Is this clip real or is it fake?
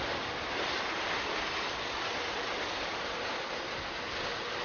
real